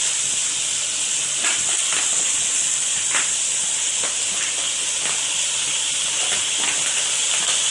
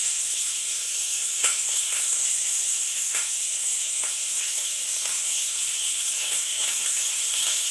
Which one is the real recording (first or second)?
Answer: first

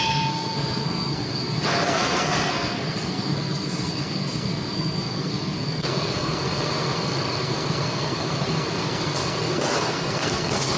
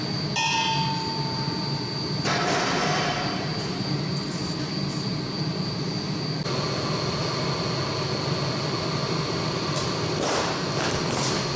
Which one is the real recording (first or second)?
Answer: second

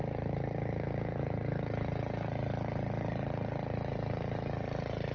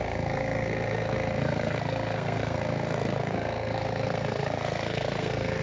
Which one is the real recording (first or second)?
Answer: first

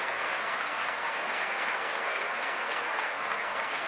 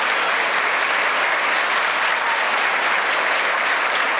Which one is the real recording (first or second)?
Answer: second